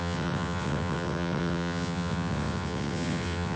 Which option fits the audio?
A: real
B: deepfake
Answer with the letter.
B